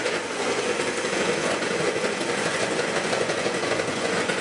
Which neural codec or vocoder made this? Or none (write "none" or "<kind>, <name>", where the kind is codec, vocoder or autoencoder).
vocoder, Vocos